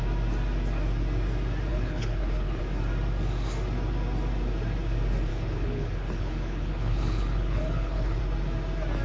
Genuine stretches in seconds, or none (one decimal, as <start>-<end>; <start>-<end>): 0.0-1.7; 2.6-5.3; 8.2-9.0